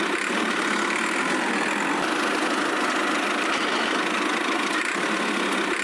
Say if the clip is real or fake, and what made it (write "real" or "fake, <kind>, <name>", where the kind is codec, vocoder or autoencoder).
real